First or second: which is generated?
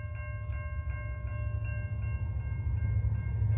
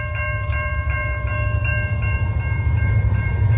second